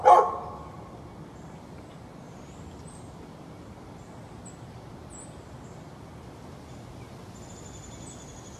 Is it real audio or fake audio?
real